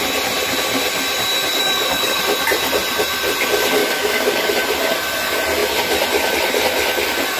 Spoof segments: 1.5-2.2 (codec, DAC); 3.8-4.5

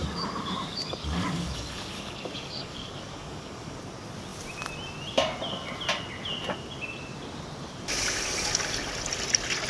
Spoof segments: 0.0-3.8 (codec, DAC)

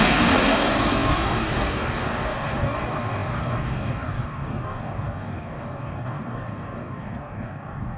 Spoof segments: 0.0-8.0 (codec, DAC)

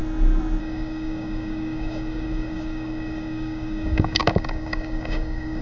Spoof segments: 0.6-5.6 (codec, DAC)

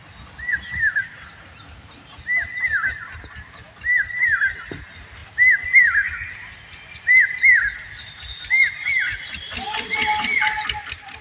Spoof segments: none

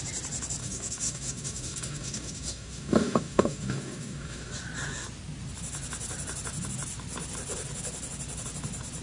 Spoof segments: 0.6-4.5 (codec, DAC)

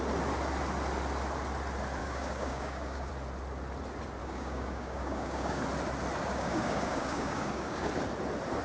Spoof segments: 2.0-3.1 (codec, DAC); 4.2-5.6; 6.2-7.9